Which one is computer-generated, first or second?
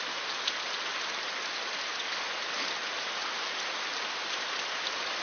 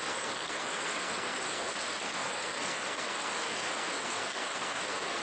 second